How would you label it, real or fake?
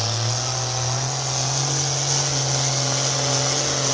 real